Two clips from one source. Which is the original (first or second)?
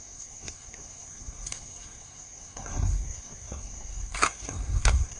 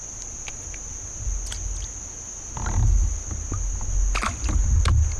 second